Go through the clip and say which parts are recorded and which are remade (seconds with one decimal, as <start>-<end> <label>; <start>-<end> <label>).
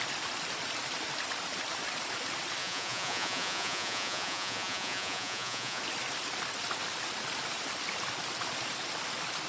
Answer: 0.0-2.6 recorded; 2.6-5.8 remade; 5.8-9.5 recorded